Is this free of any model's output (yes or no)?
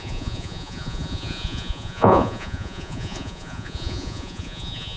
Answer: no